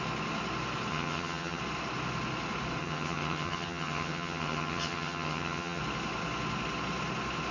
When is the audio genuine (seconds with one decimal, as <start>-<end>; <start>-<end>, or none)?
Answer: 0.0-0.9; 1.6-2.8; 5.8-7.5